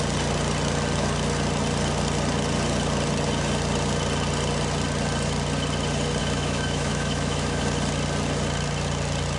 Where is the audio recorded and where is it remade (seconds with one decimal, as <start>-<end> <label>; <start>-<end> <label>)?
0.0-6.2 recorded; 6.2-7.6 remade; 7.6-9.4 recorded